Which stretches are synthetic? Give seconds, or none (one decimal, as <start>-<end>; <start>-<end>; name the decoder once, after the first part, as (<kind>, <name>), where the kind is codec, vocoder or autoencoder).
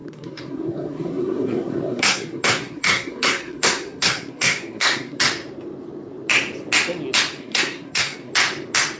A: 0.0-5.2 (codec, SNAC); 7.4-8.3